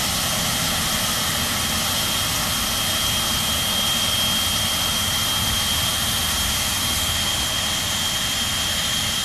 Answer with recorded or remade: recorded